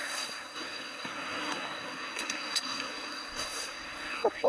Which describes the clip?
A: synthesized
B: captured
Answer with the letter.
A